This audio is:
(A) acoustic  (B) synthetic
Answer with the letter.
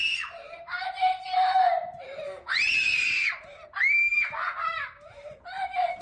B